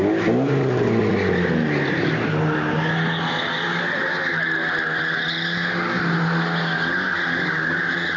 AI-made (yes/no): no